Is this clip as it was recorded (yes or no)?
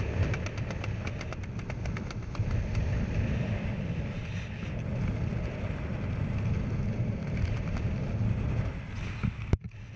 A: yes